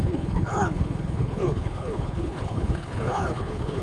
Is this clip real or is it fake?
fake